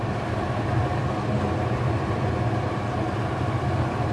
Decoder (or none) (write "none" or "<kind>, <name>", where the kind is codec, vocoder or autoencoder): none